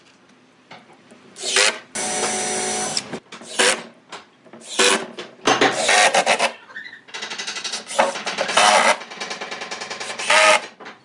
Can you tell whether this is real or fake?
real